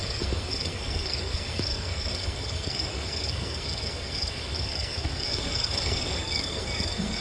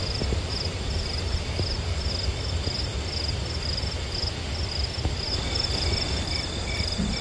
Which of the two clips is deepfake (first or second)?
first